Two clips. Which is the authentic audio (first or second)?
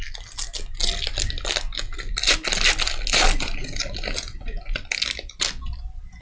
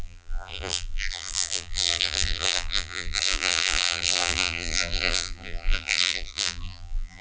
first